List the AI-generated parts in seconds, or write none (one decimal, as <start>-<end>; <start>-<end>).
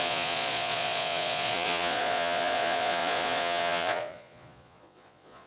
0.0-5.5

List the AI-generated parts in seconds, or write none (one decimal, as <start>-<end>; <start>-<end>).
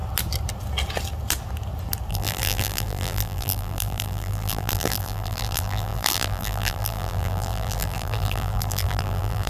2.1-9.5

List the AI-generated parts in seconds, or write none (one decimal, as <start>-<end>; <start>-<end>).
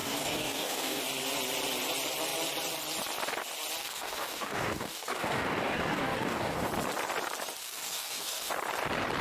0.0-1.0; 3.8-6.7; 7.6-8.5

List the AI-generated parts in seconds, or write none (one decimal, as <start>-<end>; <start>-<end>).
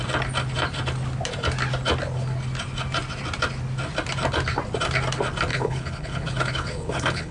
5.5-7.3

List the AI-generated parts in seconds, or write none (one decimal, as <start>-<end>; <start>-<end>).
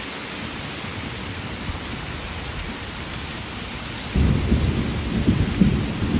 0.9-3.7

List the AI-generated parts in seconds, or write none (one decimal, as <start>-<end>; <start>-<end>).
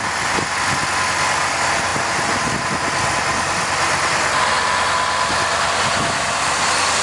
none